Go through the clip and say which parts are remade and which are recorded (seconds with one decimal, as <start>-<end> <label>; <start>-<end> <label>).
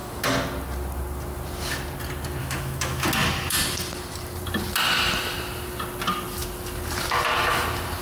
0.0-2.4 recorded; 2.4-3.1 remade; 3.1-8.0 recorded